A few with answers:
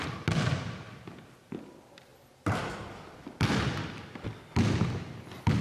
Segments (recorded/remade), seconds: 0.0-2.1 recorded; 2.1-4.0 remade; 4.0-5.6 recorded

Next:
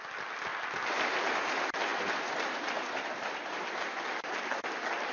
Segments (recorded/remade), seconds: 0.0-5.1 recorded

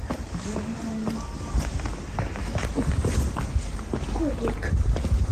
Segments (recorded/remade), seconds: 0.0-2.4 recorded; 2.4-2.9 remade; 2.9-5.3 recorded

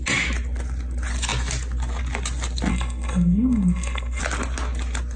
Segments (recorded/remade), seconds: 0.0-2.7 recorded; 2.7-4.2 remade; 4.2-5.2 recorded